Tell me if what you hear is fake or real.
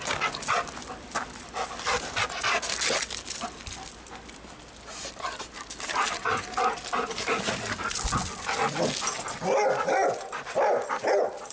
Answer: real